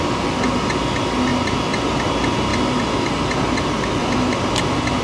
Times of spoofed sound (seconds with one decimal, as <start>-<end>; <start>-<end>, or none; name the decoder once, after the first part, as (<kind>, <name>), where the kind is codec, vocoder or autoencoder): 4.0-5.0 (vocoder, BigVGAN v2)